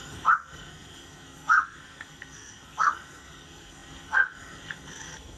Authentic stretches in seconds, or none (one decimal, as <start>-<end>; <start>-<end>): none